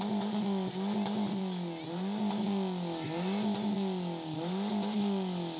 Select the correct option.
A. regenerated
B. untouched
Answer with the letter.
B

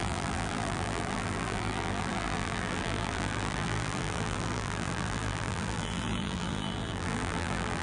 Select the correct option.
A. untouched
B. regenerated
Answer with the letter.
B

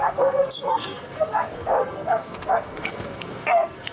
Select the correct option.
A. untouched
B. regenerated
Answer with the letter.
B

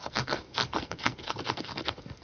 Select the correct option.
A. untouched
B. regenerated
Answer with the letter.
B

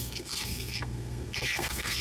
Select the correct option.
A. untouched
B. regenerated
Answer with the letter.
B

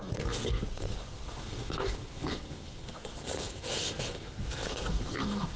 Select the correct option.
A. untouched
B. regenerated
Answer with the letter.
B